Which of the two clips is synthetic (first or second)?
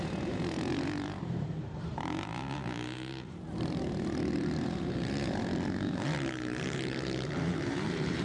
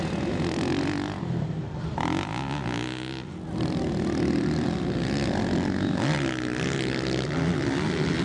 first